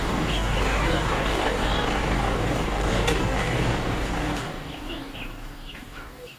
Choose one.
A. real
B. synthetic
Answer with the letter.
B